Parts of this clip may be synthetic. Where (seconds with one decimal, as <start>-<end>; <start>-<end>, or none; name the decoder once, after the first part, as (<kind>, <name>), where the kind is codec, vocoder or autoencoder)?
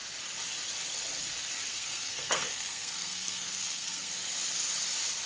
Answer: 1.7-4.1 (codec, SNAC)